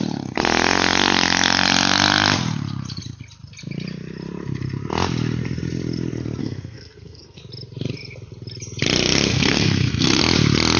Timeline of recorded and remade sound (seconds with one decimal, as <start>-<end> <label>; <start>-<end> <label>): 0.0-6.4 recorded; 6.4-7.4 remade; 7.4-9.3 recorded; 9.3-10.2 remade; 10.2-10.8 recorded